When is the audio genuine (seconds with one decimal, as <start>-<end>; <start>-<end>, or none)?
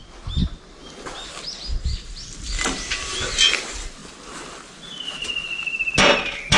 0.0-6.6